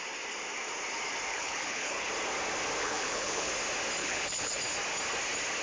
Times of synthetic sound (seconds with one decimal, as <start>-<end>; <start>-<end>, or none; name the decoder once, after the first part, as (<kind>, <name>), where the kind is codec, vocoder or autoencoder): 1.3-2.1 (codec, HILCodec); 2.8-3.5; 4.0-4.6